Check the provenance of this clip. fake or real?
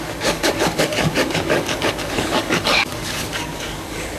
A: fake